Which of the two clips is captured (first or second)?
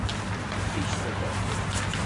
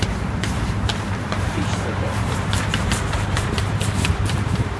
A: first